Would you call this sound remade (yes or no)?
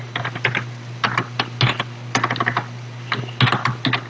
no